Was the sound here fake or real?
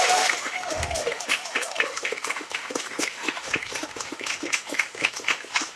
fake